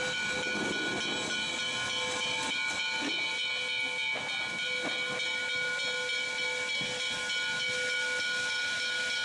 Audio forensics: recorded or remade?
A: recorded